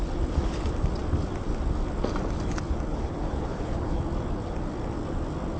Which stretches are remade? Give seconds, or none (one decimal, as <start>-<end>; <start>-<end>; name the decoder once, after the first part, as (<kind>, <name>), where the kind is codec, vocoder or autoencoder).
2.9-4.0 (codec, HILCodec)